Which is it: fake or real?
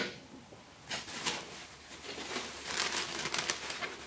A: real